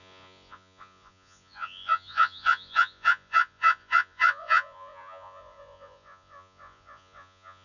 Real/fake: fake